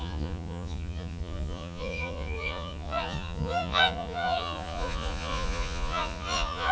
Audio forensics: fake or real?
fake